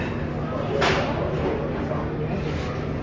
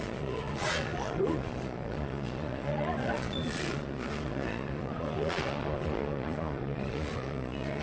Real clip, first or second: first